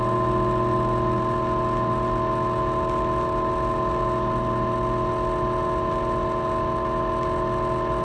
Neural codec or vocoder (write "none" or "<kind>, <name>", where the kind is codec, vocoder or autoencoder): none